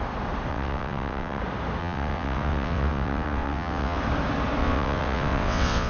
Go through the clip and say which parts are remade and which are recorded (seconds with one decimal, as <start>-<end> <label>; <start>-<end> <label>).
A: 0.0-0.5 recorded; 0.5-1.4 remade; 1.4-1.8 recorded; 1.8-4.0 remade; 4.0-4.6 recorded; 4.6-5.9 remade